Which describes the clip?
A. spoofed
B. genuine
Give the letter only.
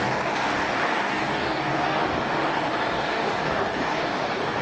A